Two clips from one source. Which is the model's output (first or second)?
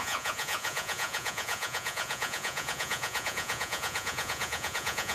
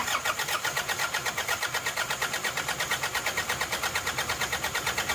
first